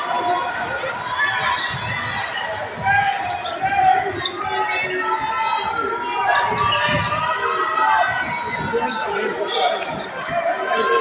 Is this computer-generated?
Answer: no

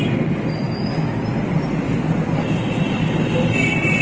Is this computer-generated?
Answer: no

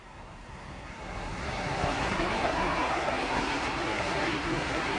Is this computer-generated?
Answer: yes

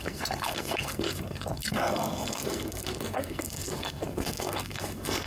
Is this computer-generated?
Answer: yes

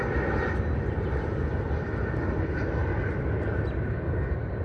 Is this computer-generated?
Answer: no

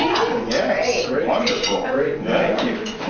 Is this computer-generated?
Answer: yes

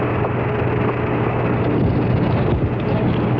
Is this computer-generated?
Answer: no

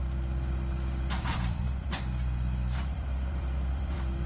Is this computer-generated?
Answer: yes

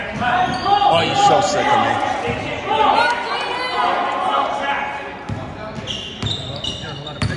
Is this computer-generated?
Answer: no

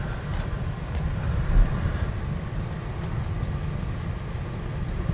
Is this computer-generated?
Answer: no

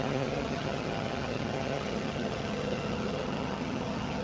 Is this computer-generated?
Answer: yes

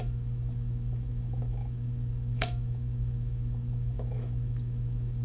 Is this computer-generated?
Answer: yes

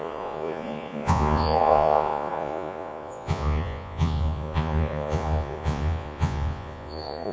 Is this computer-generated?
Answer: yes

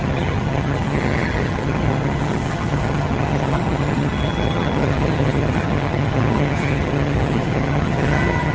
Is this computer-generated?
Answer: yes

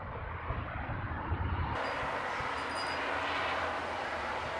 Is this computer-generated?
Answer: no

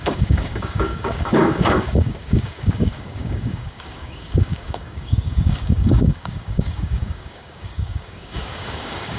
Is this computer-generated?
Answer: yes